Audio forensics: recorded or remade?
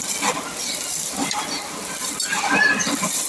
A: remade